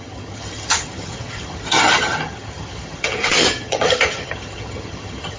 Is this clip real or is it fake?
fake